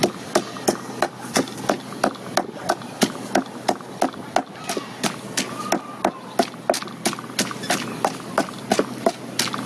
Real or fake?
real